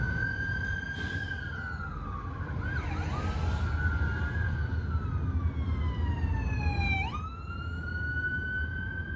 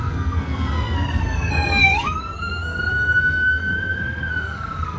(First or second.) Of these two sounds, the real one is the first